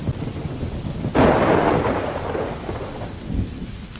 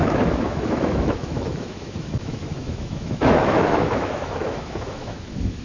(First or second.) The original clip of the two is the first